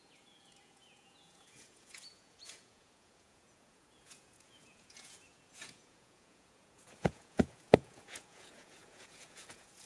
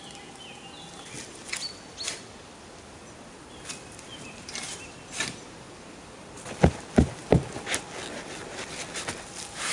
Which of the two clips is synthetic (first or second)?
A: first